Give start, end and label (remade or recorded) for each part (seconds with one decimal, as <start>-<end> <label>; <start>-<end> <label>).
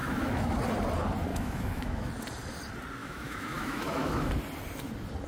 0.0-0.6 remade; 0.6-1.3 recorded; 1.3-2.1 remade; 2.1-3.0 recorded; 3.0-4.3 remade; 4.3-5.3 recorded